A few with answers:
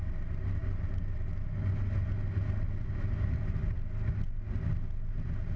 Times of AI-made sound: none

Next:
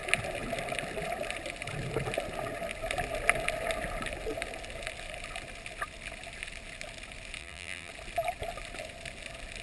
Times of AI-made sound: 7.4-7.9 (vocoder, BigVGAN v2)

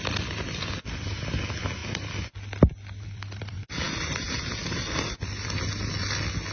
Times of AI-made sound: 1.8-5.6 (vocoder, BigVGAN v2)

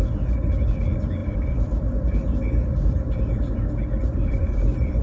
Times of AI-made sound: 1.2-3.4 (vocoder, BigVGAN v2); 4.1-5.0